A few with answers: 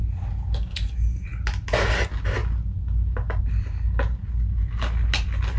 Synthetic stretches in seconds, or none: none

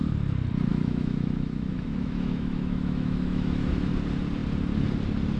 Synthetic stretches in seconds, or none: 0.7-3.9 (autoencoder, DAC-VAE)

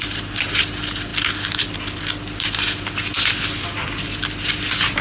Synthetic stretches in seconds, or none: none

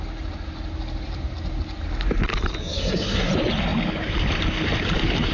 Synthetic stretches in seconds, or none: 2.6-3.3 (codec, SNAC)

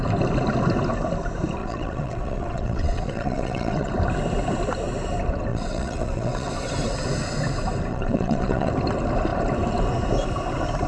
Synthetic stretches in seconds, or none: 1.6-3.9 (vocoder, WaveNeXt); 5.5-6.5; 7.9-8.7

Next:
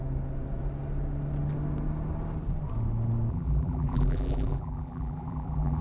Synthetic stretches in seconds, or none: 3.3-5.8 (vocoder, BigVGAN v2)